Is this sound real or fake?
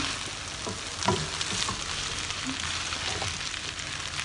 real